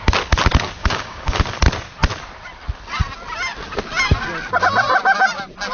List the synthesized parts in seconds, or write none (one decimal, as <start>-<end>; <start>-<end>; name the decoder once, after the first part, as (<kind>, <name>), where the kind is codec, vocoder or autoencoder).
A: 0.8-1.4 (codec, DAC)